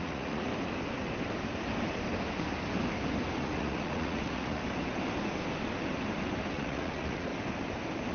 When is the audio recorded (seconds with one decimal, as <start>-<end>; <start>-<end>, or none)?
0.5-3.4; 4.6-6.5; 7.3-8.1